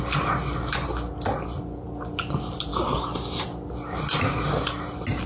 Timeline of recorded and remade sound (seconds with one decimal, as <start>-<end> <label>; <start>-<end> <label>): 0.0-5.3 recorded